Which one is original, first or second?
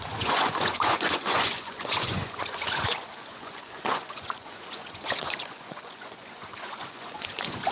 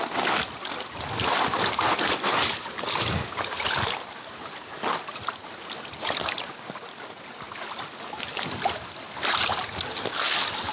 second